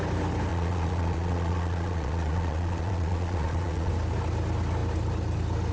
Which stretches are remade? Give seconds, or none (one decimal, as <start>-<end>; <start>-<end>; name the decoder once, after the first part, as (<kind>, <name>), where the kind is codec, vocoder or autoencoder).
0.5-3.9 (vocoder, Vocos)